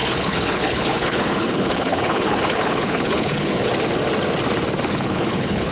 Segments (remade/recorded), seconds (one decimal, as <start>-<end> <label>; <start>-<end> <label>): 0.0-3.7 remade; 3.7-4.9 recorded; 4.9-5.7 remade